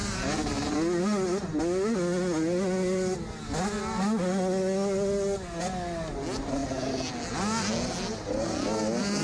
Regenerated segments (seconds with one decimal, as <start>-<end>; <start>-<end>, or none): 0.0-0.7